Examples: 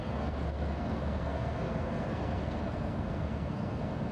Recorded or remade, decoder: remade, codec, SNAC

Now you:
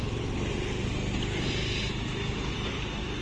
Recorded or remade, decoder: recorded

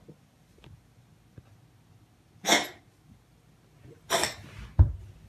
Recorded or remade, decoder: recorded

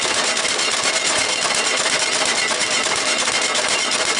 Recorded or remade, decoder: recorded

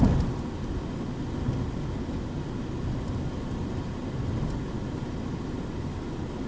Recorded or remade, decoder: recorded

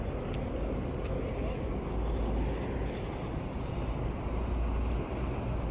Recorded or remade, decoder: recorded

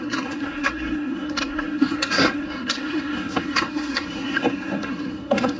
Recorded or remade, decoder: remade, codec, SNAC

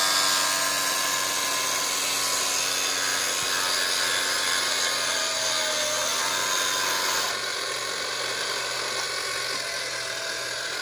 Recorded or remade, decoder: recorded